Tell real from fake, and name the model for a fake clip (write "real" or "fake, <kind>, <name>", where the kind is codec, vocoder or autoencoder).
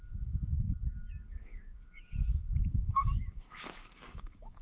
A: fake, codec, DAC